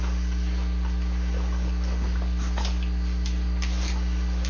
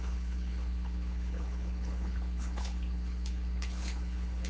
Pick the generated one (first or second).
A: second